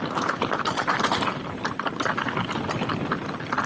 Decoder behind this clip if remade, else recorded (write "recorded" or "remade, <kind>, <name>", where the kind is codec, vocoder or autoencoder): recorded